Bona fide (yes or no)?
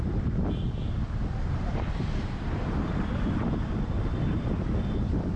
no